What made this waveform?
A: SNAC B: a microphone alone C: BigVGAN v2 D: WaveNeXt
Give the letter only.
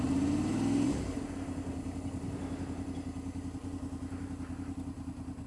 B